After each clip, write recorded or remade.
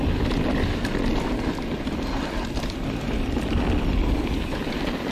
recorded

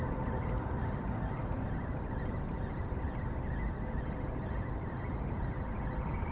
recorded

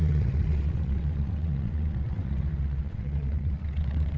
remade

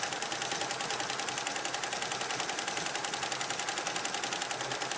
recorded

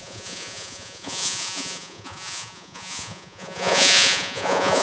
remade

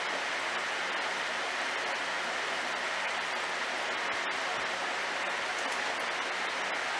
recorded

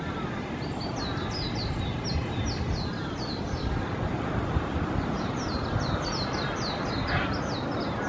recorded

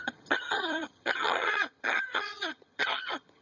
remade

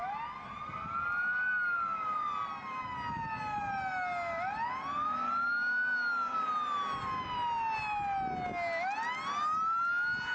recorded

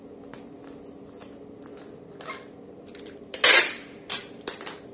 recorded